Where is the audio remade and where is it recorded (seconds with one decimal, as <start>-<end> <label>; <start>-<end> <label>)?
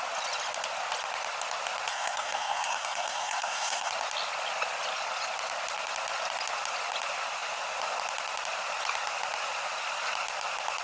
0.0-1.9 recorded; 1.9-3.9 remade; 3.9-10.8 recorded